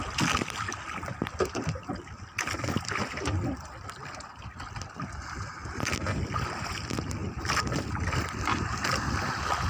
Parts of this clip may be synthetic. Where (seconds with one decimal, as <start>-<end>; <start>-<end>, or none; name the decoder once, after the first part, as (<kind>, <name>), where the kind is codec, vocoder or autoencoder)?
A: none